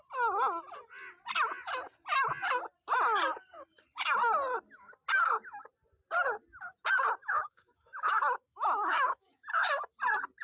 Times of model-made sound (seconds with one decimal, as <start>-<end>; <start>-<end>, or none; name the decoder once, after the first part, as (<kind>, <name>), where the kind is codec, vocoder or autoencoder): 7.2-9.8 (autoencoder, DAC-VAE)